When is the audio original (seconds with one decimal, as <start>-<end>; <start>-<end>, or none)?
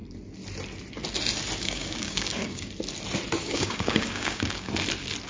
0.0-1.6; 2.7-3.4; 4.7-5.3